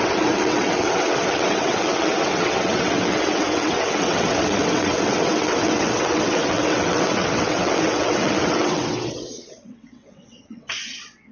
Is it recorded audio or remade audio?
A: remade